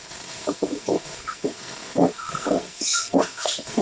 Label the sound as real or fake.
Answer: fake